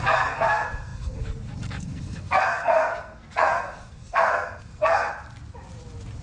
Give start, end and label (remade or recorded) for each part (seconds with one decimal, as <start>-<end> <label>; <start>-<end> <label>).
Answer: 0.0-5.1 remade; 5.1-6.2 recorded